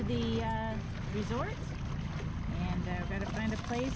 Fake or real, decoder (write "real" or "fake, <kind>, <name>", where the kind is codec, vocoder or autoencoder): real